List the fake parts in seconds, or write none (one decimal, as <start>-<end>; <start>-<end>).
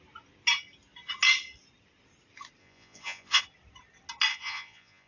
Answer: 2.6-3.4; 4.3-5.1